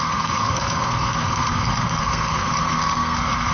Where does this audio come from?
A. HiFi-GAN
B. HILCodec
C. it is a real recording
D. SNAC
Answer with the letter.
D